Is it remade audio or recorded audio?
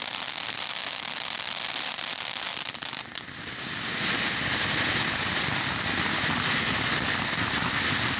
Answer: recorded